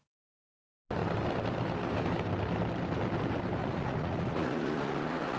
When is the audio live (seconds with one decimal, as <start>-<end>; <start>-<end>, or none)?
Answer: 0.0-3.6